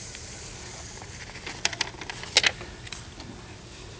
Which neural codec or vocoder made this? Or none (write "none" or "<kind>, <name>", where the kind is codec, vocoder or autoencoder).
none